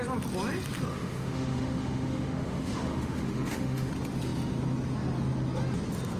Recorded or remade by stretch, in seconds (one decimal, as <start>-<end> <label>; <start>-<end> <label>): 0.0-0.9 recorded; 0.9-3.9 remade; 3.9-6.2 recorded